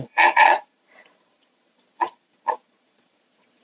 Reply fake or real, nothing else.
fake